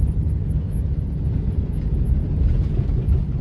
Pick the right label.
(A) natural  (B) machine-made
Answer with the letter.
B